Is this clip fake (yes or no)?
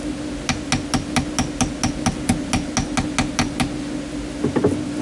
no